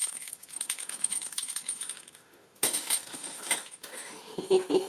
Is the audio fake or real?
fake